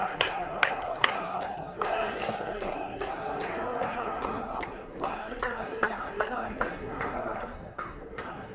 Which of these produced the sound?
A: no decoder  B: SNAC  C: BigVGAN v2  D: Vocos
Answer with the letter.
B